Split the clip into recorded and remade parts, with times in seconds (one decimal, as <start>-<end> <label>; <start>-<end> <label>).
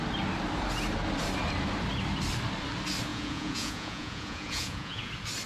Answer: 0.0-3.1 recorded; 3.1-5.1 remade; 5.1-5.5 recorded